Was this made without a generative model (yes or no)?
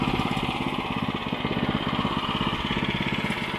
no